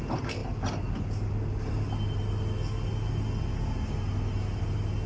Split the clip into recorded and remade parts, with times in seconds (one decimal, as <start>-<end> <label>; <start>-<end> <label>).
0.0-5.1 recorded

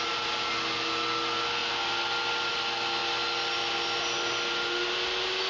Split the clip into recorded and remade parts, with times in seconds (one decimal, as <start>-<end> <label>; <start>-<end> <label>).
0.0-5.5 recorded

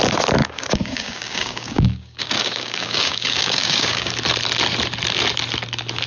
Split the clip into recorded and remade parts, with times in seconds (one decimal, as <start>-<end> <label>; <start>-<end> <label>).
0.0-0.4 recorded; 0.4-4.1 remade; 4.1-6.1 recorded

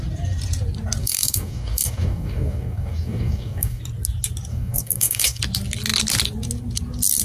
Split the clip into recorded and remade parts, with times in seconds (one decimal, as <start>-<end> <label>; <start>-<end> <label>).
0.0-1.0 recorded; 1.0-3.8 remade; 3.8-4.5 recorded; 4.5-5.4 remade; 5.4-7.2 recorded